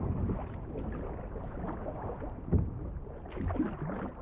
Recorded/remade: recorded